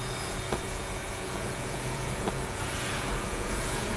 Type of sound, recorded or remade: remade